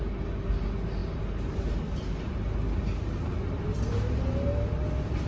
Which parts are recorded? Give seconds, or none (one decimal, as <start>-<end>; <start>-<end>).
0.0-5.3